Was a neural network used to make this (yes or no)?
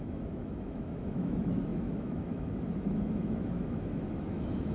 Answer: yes